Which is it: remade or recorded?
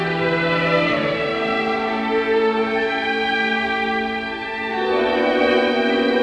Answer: recorded